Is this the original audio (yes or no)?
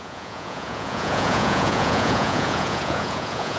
no